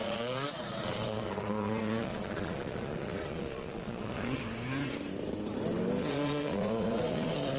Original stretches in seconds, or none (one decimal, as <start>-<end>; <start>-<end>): 4.4-6.0